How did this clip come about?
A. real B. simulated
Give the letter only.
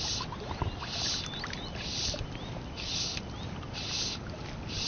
A